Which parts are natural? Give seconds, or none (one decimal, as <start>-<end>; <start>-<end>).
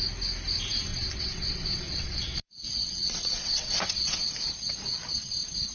0.0-0.9; 4.3-5.7